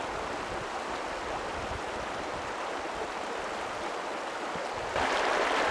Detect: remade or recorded recorded